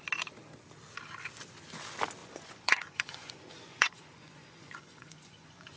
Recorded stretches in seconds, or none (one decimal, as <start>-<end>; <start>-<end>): 0.0-2.2